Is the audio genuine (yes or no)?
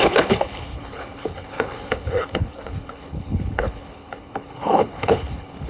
no